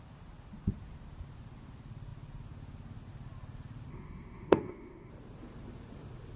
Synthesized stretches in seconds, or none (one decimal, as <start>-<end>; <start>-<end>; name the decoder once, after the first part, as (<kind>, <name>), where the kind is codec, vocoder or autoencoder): 3.9-5.1 (codec, SNAC)